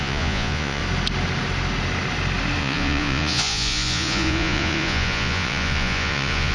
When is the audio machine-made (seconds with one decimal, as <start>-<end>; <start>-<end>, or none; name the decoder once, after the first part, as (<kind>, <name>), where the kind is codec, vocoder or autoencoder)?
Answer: 0.0-0.8 (vocoder, Vocos); 2.6-6.5